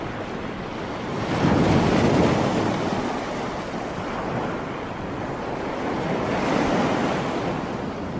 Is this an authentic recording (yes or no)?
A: yes